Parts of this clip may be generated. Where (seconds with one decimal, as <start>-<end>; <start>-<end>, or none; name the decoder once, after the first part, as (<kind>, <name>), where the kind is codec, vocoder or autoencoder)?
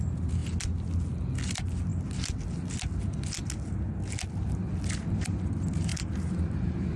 5.9-7.0 (vocoder, BigVGAN v2)